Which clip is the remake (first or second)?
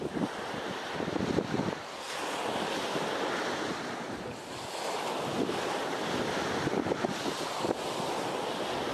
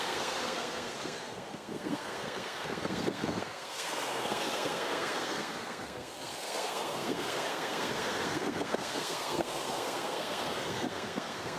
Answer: second